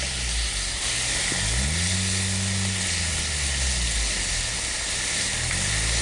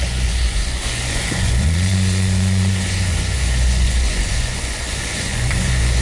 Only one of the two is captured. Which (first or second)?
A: first